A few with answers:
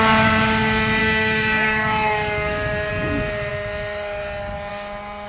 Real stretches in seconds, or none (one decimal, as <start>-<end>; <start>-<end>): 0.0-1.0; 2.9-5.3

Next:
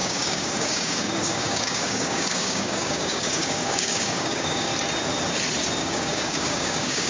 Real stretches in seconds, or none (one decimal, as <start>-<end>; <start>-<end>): 4.7-5.8

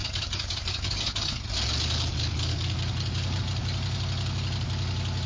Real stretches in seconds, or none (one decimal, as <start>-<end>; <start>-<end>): 1.4-2.5; 3.4-5.3